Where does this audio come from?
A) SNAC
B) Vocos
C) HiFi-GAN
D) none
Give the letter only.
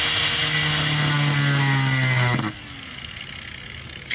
D